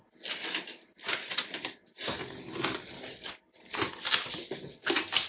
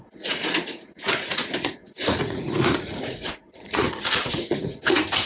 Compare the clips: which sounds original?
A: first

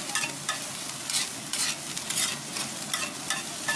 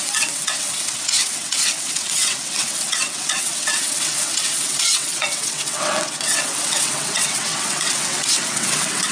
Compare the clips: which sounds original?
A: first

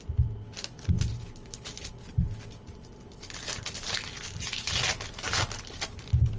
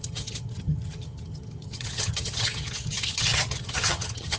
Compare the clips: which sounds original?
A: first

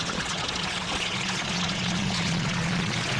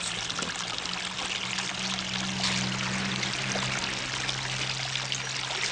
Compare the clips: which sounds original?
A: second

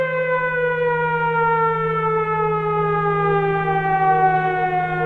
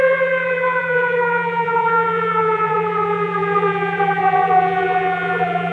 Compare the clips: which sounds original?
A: first